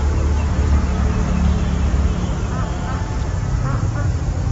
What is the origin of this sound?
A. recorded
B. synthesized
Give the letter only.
A